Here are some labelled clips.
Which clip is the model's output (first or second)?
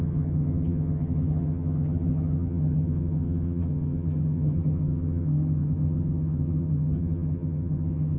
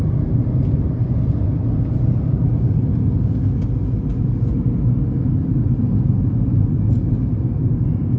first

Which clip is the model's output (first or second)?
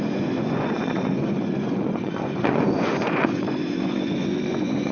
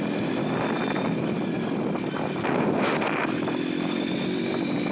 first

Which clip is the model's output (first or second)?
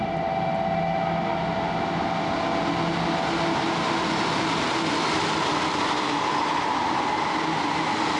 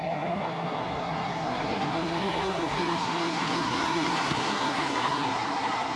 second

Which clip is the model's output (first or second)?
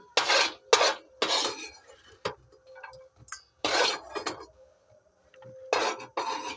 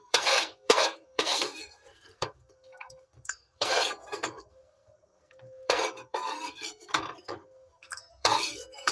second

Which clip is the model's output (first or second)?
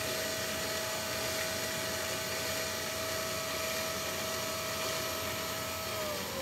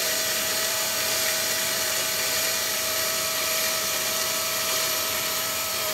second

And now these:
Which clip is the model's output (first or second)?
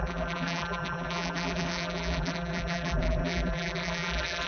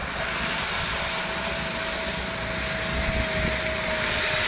first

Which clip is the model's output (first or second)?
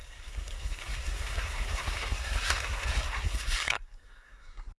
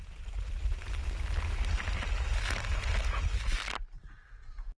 first